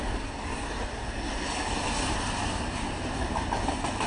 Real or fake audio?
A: real